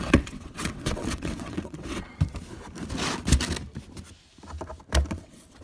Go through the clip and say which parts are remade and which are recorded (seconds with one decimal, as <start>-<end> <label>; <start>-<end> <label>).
0.0-2.1 remade; 2.1-5.1 recorded; 5.1-5.6 remade